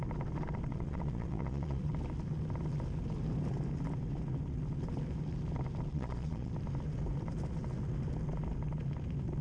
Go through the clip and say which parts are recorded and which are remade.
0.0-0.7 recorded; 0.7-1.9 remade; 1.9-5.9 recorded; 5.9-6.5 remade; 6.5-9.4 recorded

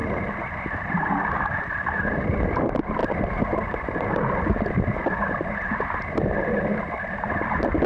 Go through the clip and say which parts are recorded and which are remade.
0.0-7.9 recorded